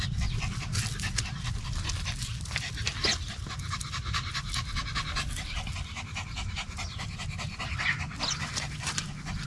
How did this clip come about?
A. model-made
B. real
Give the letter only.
B